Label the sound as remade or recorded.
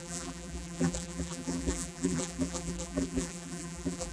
remade